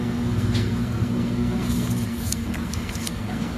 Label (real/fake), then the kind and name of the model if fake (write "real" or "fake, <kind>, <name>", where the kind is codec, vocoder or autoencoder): fake, codec, SNAC